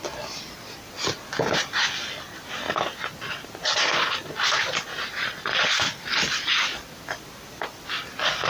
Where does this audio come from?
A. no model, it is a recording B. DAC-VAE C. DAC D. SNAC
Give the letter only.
A